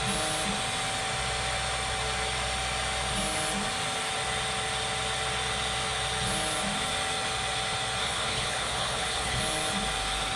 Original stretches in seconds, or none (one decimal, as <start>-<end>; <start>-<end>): 0.0-8.0; 9.4-10.4